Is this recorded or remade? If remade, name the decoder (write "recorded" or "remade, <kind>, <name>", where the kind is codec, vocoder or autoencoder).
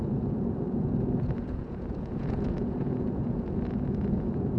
remade, vocoder, Vocos